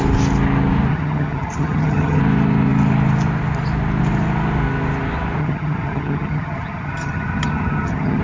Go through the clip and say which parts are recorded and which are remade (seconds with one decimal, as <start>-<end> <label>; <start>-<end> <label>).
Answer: 0.0-0.9 recorded; 0.9-2.2 remade; 2.2-5.4 recorded; 5.4-8.2 remade

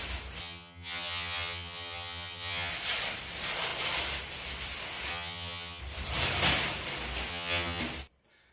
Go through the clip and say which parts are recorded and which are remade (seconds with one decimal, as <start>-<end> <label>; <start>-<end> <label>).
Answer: 0.0-0.4 recorded; 0.4-2.7 remade; 2.7-5.1 recorded; 5.1-5.8 remade; 5.8-7.3 recorded; 7.3-7.8 remade; 7.8-8.5 recorded

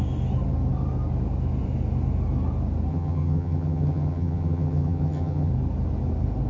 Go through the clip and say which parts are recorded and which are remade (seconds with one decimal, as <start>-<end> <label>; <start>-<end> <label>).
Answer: 0.0-2.9 recorded; 2.9-5.5 remade; 5.5-6.5 recorded

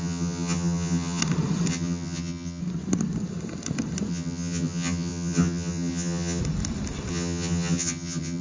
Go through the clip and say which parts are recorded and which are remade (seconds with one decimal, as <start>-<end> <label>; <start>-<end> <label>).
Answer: 0.0-1.2 remade; 1.2-1.7 recorded; 1.7-2.6 remade; 2.6-4.1 recorded; 4.1-6.4 remade; 6.4-7.1 recorded; 7.1-8.4 remade

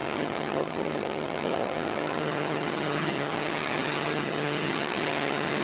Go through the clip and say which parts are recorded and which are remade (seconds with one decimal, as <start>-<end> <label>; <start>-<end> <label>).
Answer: 0.0-5.6 remade

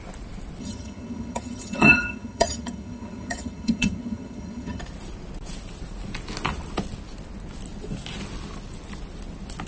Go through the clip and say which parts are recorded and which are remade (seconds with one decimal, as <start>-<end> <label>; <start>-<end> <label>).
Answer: 0.0-0.6 recorded; 0.6-4.8 remade; 4.8-9.7 recorded